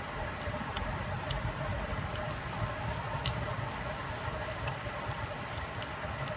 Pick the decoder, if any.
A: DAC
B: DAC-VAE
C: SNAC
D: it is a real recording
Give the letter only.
D